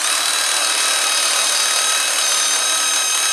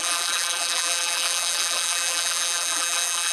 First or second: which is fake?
second